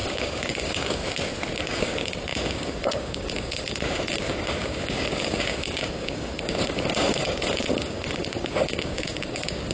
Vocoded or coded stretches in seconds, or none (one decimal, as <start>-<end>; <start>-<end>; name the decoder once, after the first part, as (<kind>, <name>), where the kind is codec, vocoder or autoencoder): 0.0-1.0 (codec, DAC); 1.6-9.7